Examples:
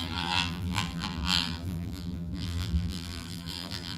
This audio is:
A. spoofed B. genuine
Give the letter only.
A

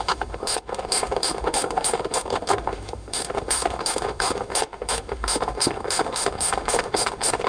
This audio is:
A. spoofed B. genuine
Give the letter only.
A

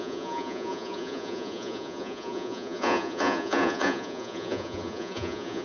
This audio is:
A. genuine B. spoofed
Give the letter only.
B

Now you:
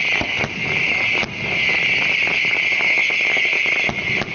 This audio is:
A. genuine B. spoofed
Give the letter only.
A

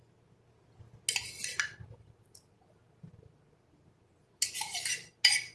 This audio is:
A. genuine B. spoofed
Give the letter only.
A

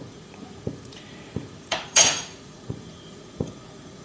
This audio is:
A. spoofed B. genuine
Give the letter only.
A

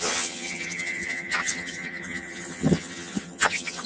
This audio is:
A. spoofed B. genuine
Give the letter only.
A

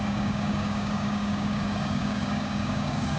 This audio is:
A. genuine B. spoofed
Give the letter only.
B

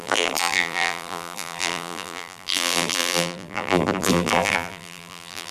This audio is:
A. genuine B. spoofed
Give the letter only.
B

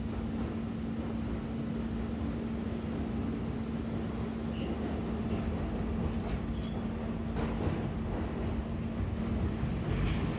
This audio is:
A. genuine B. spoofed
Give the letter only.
A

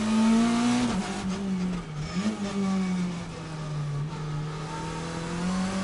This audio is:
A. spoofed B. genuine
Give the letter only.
B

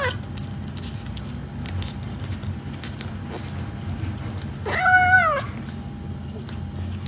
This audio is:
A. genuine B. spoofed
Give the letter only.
A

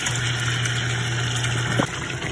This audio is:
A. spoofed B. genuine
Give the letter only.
B